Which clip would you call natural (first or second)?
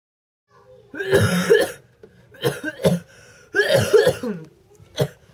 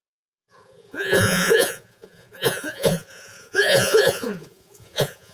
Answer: first